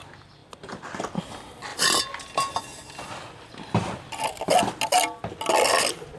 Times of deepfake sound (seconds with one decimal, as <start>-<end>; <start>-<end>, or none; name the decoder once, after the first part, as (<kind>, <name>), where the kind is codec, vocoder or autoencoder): none